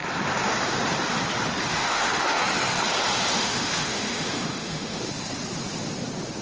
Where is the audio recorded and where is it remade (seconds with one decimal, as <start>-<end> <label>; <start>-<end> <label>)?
0.0-1.7 recorded; 1.7-2.4 remade; 2.4-3.3 recorded; 3.3-5.0 remade; 5.0-6.4 recorded